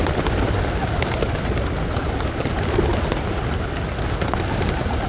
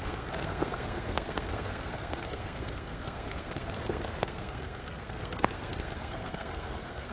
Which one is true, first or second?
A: first